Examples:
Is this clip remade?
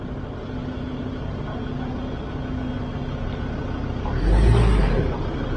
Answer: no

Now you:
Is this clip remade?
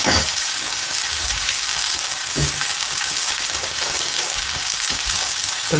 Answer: yes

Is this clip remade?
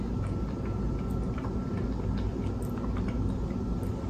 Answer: no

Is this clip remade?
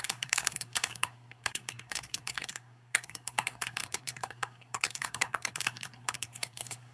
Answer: yes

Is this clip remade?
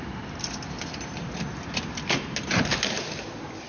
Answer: no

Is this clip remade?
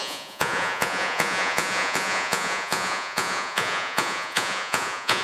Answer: yes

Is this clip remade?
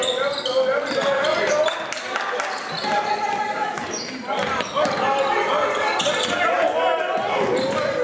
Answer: no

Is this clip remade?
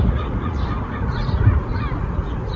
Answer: yes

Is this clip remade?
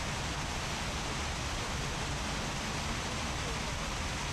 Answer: no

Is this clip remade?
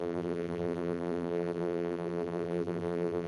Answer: yes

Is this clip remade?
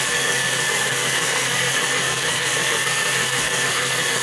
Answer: yes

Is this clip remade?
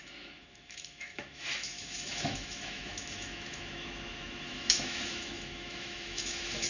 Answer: yes